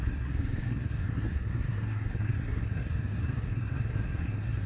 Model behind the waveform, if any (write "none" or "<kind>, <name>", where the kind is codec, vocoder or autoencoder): codec, SNAC